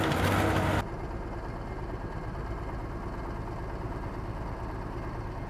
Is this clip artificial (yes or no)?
no